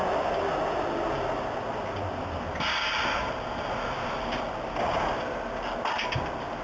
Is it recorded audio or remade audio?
recorded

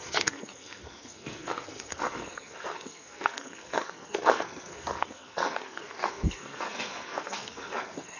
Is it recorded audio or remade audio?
remade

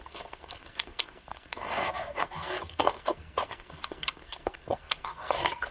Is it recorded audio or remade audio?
remade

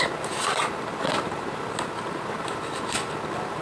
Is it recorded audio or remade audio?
recorded